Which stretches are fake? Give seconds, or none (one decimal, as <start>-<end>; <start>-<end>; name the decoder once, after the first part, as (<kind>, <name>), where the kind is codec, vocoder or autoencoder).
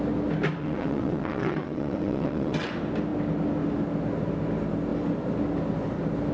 0.6-2.7 (vocoder, WaveNeXt)